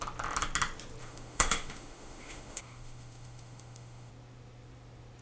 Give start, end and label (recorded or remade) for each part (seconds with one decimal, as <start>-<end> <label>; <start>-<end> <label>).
0.0-1.0 recorded; 1.0-4.1 remade; 4.1-5.2 recorded